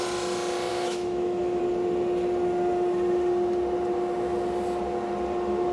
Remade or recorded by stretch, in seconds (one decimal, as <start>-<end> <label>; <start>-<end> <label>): 0.0-0.7 recorded; 0.7-1.6 remade; 1.6-5.7 recorded